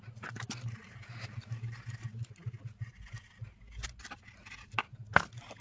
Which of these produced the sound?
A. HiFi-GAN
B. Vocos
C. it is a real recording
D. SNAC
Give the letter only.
C